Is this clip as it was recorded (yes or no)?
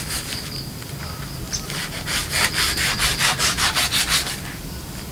yes